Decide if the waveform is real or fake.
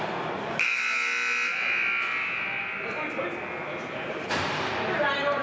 real